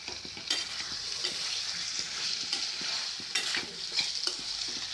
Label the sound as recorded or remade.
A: recorded